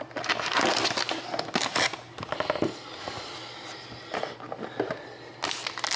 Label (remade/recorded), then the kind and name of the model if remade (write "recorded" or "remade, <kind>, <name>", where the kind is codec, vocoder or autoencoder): recorded